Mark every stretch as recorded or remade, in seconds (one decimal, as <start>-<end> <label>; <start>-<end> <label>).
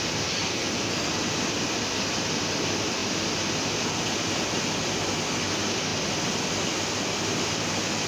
0.0-0.5 recorded; 0.5-1.1 remade; 1.1-8.1 recorded